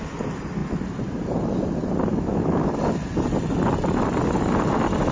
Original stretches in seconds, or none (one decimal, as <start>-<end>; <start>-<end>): 0.0-2.1; 2.7-5.1